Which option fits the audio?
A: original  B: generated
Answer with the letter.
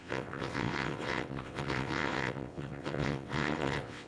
B